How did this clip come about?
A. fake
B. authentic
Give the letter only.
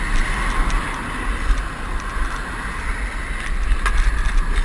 B